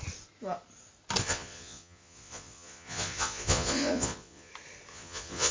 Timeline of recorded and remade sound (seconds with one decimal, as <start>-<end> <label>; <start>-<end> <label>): 0.0-1.2 recorded; 1.2-4.5 remade; 4.5-4.9 recorded; 4.9-5.5 remade